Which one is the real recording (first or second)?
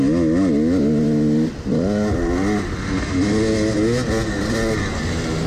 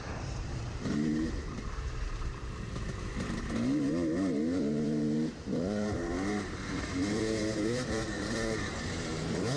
first